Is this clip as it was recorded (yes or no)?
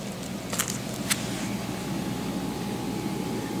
yes